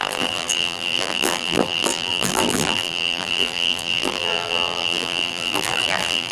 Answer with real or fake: fake